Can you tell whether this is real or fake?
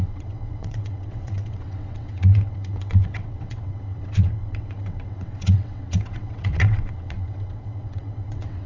fake